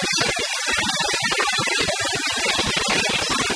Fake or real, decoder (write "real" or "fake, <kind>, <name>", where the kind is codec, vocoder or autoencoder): real